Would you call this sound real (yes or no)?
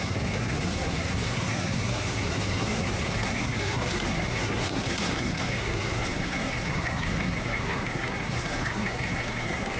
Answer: no